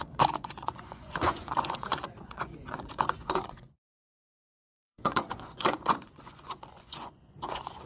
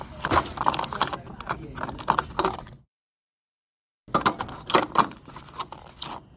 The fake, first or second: first